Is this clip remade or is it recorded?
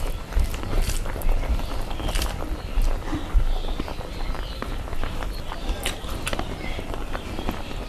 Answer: recorded